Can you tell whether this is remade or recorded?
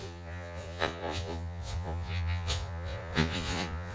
remade